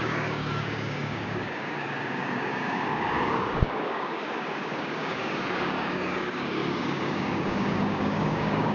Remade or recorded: remade